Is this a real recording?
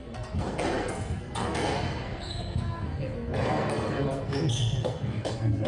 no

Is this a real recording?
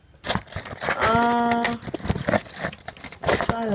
yes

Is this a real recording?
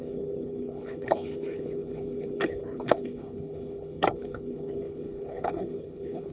no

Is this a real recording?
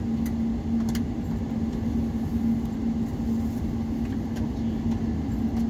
yes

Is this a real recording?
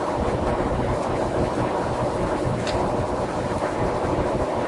no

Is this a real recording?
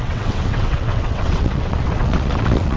no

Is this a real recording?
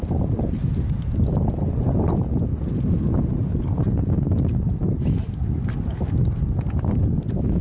yes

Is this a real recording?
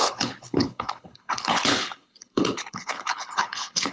no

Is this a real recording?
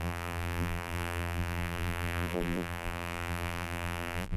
no